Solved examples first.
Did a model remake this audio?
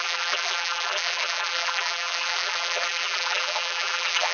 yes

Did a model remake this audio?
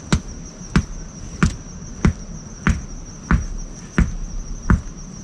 no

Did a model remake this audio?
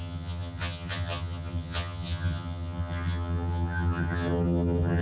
yes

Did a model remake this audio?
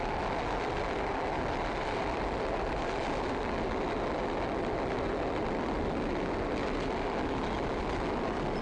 no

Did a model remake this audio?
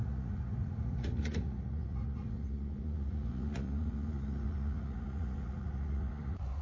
yes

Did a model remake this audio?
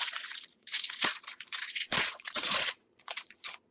yes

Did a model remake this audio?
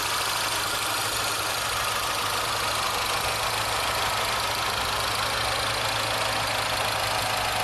no